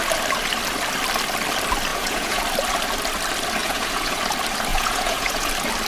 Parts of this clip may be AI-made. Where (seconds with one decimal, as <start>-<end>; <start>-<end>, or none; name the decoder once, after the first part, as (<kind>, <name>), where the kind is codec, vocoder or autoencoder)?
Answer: 1.9-2.4 (vocoder, Vocos); 3.6-4.2; 4.7-5.5